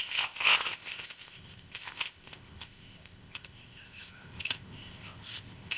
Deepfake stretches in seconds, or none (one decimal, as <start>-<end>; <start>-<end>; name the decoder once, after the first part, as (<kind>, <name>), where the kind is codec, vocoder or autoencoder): 0.0-5.8 (codec, ZipCodec)